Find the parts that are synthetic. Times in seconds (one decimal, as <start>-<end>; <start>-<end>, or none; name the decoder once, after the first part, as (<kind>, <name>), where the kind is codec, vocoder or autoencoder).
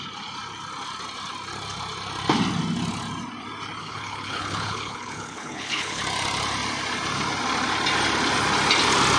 3.8-6.0 (codec, HILCodec)